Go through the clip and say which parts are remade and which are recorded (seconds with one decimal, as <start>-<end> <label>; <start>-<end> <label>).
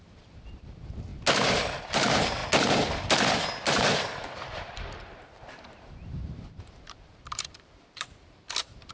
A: 0.0-1.1 remade; 1.1-1.9 recorded; 1.9-2.4 remade; 2.4-3.5 recorded; 3.5-8.9 remade